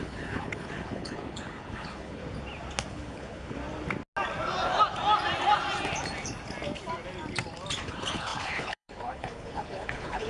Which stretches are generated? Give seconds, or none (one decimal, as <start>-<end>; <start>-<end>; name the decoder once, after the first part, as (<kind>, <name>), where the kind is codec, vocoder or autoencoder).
0.0-2.2 (codec, HILCodec); 2.9-3.6; 7.8-10.3